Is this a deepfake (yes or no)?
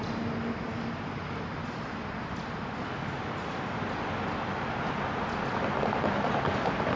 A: no